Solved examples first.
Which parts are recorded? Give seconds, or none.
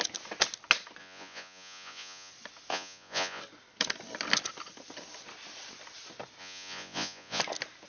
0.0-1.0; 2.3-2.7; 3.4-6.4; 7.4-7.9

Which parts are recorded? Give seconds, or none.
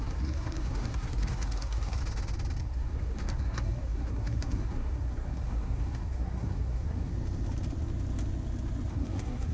2.0-2.6; 7.1-8.9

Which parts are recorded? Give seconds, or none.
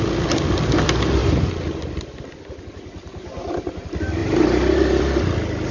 0.0-4.2; 5.0-5.7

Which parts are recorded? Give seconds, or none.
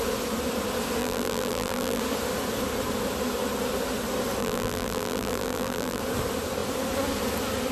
0.0-1.0; 2.0-4.4; 6.0-7.7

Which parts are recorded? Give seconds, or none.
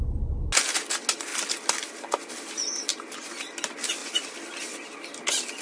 0.0-2.9; 3.6-5.6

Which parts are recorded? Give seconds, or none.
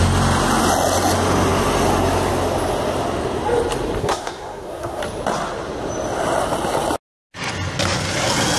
0.0-4.0; 5.0-8.6